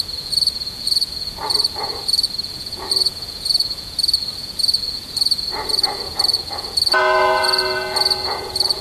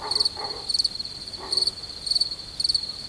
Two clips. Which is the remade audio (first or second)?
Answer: first